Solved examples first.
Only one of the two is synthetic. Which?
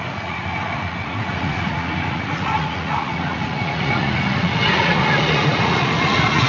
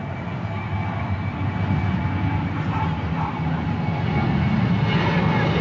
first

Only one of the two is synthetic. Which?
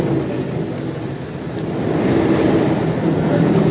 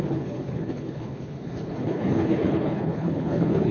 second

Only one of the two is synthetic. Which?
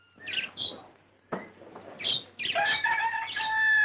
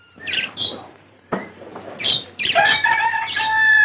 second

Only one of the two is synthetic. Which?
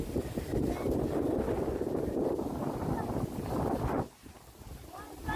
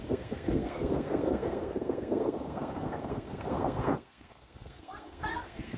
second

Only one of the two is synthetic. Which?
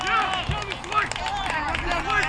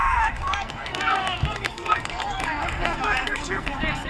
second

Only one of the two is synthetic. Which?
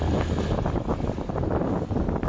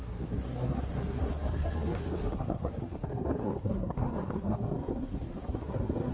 second